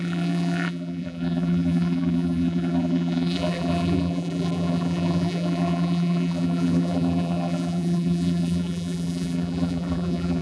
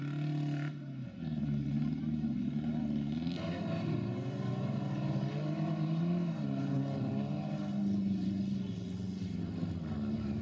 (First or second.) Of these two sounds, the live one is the second